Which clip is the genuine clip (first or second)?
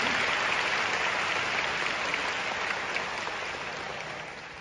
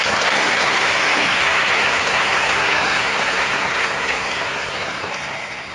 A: first